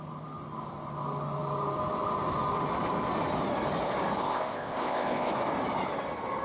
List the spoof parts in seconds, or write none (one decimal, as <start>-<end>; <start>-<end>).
4.2-5.3